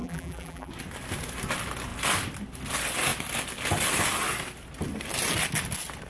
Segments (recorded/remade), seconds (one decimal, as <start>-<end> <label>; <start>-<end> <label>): 0.0-0.7 remade; 0.7-6.1 recorded